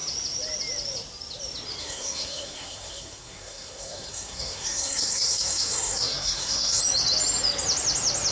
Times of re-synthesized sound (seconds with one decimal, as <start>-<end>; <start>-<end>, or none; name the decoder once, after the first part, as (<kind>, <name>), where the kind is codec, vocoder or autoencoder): 1.8-6.8 (codec, SNAC)